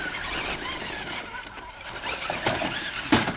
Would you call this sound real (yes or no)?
yes